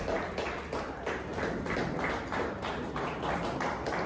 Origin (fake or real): real